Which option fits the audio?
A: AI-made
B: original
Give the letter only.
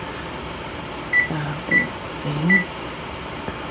B